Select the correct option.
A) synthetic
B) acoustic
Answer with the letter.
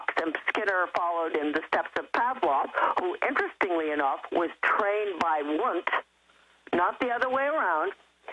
B